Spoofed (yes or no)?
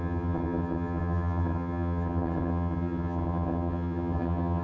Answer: yes